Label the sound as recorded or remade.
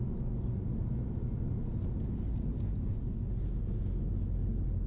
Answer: recorded